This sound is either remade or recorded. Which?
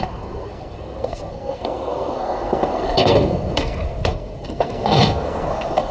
remade